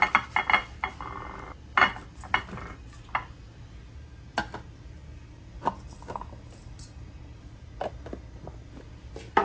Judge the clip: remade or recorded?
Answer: recorded